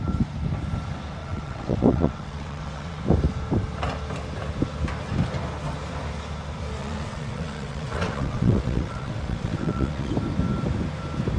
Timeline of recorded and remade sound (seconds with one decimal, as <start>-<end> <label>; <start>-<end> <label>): 0.0-1.2 recorded; 1.2-3.0 remade; 3.0-6.8 recorded; 6.8-10.1 remade; 10.1-11.4 recorded